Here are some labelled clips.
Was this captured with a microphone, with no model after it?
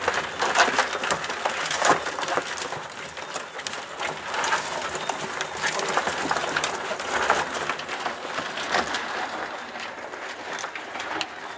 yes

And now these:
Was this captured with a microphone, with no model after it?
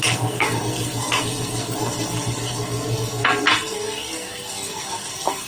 no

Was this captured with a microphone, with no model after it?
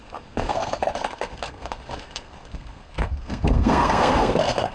no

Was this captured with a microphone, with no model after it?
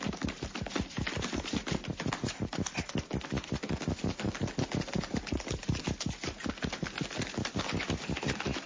yes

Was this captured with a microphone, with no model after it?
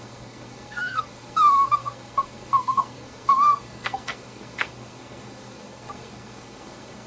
no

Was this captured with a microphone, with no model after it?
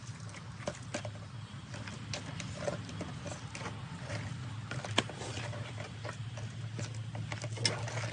yes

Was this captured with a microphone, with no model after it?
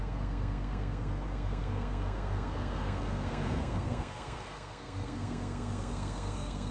no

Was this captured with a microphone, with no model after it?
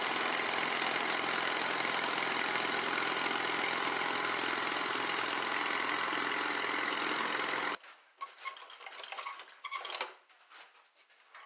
yes